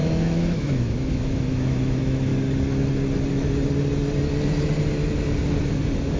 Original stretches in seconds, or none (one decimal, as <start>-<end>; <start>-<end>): 2.3-6.2